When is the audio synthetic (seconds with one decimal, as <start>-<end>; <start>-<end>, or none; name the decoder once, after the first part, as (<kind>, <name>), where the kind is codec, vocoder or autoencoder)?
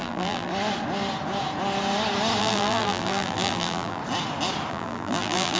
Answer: 0.0-0.5 (vocoder, BigVGAN v2); 2.4-4.0; 4.7-5.6